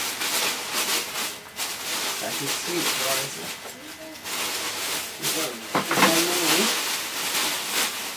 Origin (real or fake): real